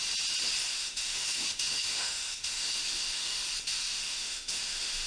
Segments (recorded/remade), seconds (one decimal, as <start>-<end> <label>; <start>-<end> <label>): 0.0-0.7 recorded; 0.7-3.4 remade; 3.4-3.8 recorded; 3.8-5.1 remade

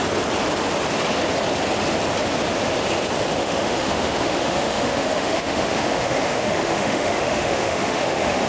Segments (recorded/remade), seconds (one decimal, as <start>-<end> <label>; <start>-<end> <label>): 0.0-3.4 recorded; 3.4-8.5 remade